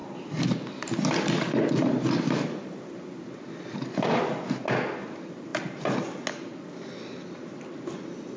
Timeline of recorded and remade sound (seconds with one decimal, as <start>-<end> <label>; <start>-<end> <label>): 0.0-8.4 recorded